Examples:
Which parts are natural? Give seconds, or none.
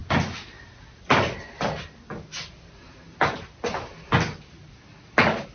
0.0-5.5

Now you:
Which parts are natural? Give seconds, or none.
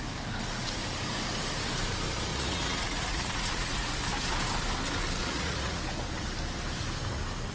0.0-2.3; 3.9-5.2; 5.8-7.5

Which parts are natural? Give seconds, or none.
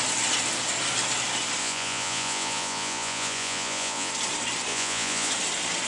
0.0-1.6; 4.1-4.7; 5.3-5.9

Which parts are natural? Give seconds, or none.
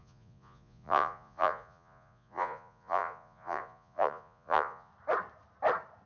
4.9-6.1